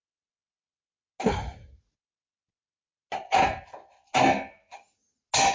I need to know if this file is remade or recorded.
recorded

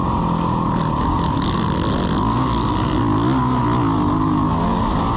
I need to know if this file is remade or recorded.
recorded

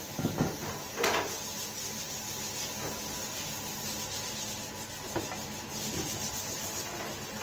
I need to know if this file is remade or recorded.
recorded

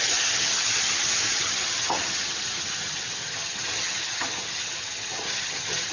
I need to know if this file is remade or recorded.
remade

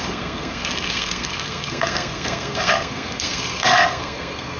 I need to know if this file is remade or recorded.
remade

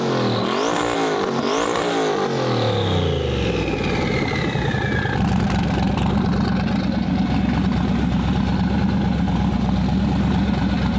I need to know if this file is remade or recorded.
recorded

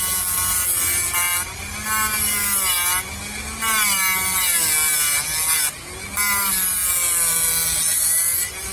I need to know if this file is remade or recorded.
recorded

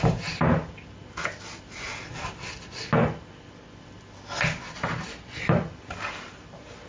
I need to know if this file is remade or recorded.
recorded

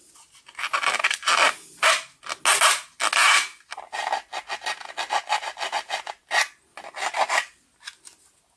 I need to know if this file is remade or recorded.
recorded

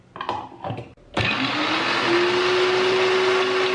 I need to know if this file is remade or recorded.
recorded